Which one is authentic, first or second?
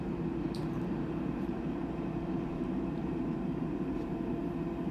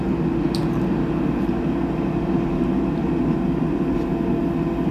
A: second